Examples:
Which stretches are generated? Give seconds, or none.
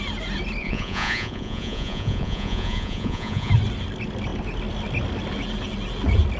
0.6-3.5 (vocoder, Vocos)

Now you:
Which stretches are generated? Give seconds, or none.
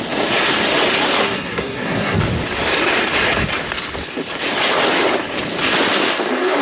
1.2-2.2 (codec, SNAC)